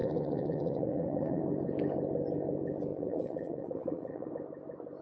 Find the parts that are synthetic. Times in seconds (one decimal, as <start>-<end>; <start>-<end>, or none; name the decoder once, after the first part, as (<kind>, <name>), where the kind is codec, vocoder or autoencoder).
0.0-1.4 (vocoder, Vocos); 2.9-4.3